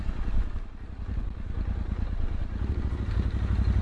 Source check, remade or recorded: recorded